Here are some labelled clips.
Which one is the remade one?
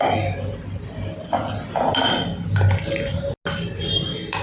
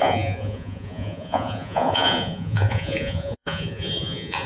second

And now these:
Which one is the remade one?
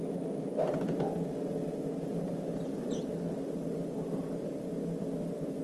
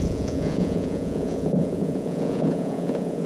second